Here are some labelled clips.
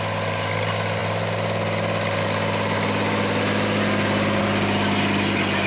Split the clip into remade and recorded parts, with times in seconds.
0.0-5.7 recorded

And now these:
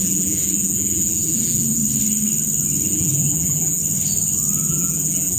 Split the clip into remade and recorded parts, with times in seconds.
0.0-1.8 remade; 1.8-2.9 recorded; 2.9-3.8 remade; 3.8-4.7 recorded; 4.7-5.4 remade

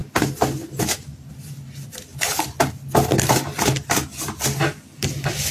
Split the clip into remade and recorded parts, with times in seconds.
0.0-1.3 recorded; 1.3-5.5 remade

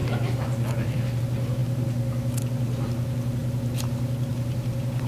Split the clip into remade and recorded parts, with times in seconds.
0.0-1.2 remade; 1.2-5.1 recorded